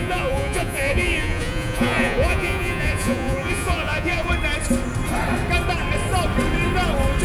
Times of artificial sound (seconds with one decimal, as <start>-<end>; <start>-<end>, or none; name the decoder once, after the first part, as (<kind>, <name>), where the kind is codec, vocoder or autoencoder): 0.0-4.3 (vocoder, Vocos)